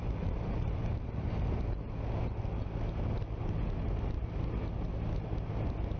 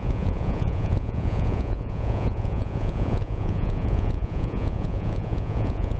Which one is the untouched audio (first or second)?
first